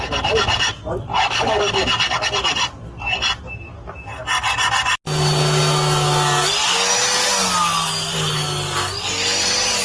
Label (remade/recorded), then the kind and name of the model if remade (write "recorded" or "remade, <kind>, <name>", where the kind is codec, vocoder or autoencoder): recorded